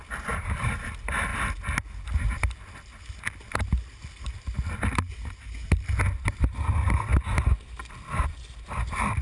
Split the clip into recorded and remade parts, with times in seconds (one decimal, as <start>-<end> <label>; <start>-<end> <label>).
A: 0.0-1.3 remade; 1.3-6.3 recorded; 6.3-7.1 remade; 7.1-8.1 recorded; 8.1-9.2 remade